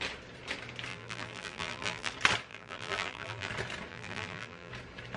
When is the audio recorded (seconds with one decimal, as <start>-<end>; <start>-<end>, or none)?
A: 0.0-0.9; 2.1-2.5; 3.5-3.9; 4.7-5.2